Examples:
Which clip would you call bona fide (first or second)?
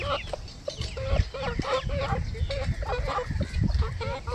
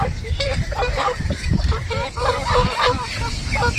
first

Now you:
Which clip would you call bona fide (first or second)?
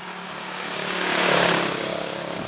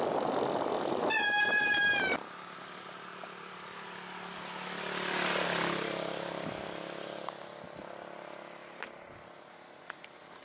second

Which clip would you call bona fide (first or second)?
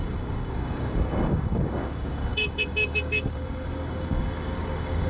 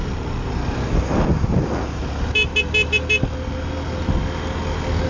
second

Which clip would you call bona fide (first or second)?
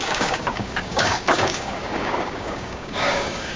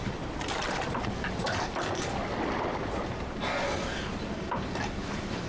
second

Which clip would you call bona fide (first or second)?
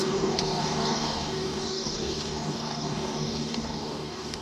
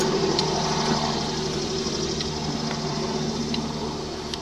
second